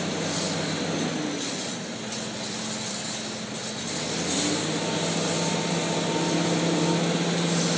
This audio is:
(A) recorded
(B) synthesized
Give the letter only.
A